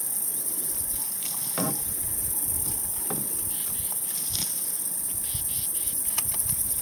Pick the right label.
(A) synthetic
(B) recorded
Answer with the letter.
B